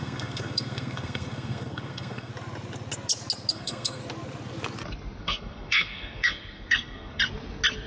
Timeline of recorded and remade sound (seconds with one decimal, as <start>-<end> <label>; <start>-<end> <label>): 0.0-2.3 remade; 2.3-3.5 recorded; 3.5-4.0 remade; 4.0-5.2 recorded; 5.2-7.2 remade; 7.2-7.9 recorded